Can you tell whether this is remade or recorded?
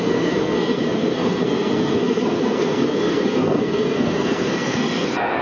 remade